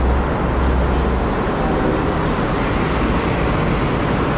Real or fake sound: real